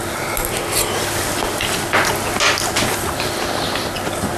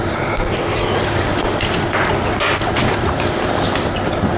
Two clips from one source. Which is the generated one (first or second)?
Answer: second